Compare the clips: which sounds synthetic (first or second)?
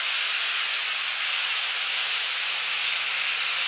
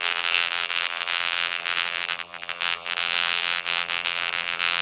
second